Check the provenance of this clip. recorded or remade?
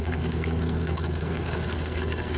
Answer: remade